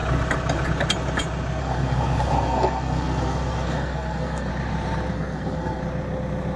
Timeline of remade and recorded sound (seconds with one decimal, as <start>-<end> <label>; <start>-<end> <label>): 0.0-1.6 recorded; 1.6-4.5 remade; 4.5-5.1 recorded; 5.1-5.8 remade; 5.8-6.6 recorded